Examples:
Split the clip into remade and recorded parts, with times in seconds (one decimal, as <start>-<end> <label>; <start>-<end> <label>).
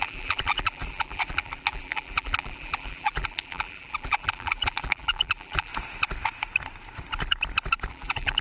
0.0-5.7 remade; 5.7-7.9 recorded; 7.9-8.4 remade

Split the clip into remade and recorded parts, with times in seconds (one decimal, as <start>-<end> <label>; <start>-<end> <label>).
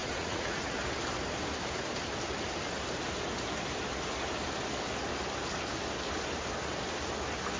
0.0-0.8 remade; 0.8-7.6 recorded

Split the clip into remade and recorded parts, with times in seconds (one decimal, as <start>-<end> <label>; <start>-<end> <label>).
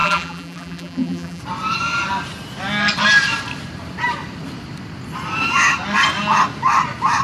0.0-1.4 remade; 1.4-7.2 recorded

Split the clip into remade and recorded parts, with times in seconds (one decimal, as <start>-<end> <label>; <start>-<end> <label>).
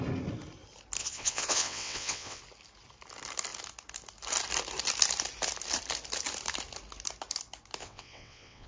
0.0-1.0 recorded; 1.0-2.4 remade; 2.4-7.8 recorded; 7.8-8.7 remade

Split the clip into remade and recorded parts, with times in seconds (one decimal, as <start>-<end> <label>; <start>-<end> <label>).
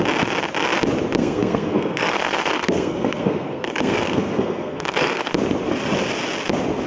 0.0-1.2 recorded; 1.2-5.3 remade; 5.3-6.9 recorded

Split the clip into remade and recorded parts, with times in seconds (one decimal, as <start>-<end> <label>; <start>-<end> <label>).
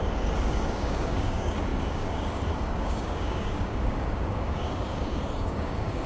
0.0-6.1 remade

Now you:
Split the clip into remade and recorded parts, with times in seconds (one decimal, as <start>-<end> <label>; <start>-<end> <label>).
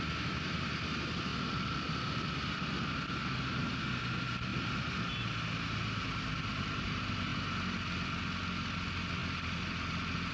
0.0-1.3 recorded; 1.3-2.6 remade; 2.6-10.3 recorded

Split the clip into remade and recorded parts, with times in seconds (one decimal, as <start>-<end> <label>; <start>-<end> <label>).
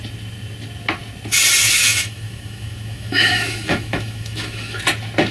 0.0-1.6 recorded; 1.6-4.8 remade; 4.8-5.3 recorded